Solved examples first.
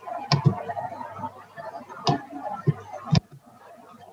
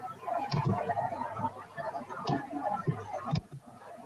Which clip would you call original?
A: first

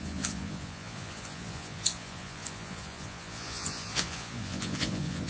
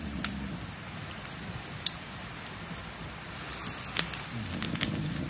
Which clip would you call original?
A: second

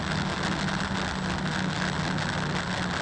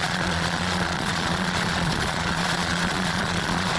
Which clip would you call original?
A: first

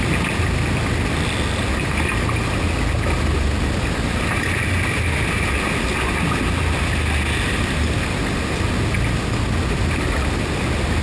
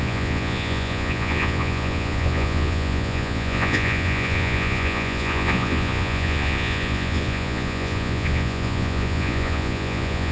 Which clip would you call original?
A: first